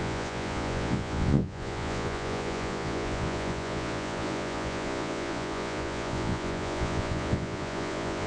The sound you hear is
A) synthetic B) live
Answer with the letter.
A